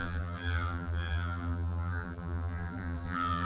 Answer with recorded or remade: remade